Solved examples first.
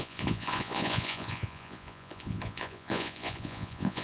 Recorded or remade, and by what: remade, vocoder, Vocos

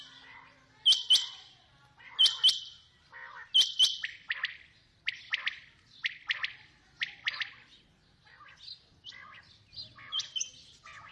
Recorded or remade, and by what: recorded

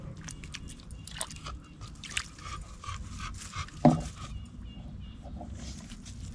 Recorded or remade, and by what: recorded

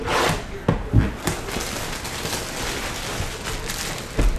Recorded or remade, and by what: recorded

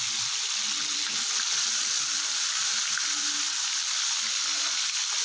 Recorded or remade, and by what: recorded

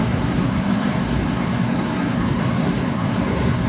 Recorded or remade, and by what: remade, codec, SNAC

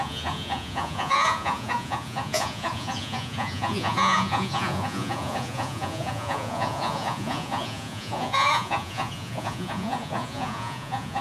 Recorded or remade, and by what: remade, vocoder, Vocos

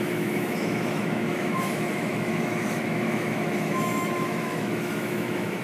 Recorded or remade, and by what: remade, autoencoder, DAC-VAE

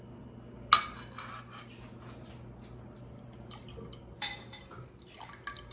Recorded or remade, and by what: recorded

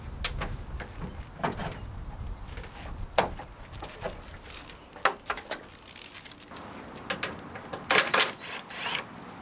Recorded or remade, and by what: recorded